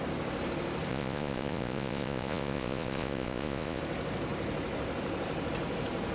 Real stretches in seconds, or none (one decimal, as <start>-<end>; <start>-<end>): 0.0-0.9; 3.8-6.1

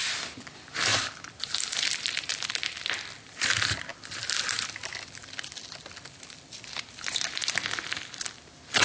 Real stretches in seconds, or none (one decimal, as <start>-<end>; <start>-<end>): 0.0-8.8

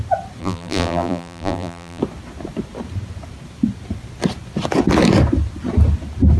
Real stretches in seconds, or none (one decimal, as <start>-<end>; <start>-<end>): 0.0-0.4; 2.0-6.4

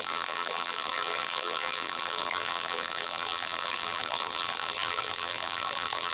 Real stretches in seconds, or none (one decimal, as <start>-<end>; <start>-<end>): none

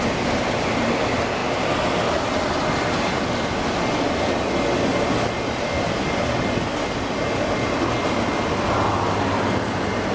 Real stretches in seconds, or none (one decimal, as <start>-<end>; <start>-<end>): 0.0-10.1

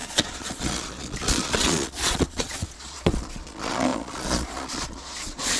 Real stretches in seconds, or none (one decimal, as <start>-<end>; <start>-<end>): none

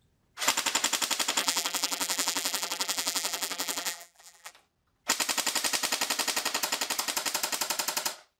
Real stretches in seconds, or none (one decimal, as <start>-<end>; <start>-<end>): 0.0-1.4; 4.5-8.4